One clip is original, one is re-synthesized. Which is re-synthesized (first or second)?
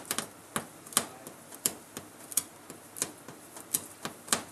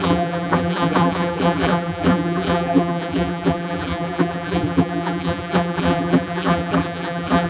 second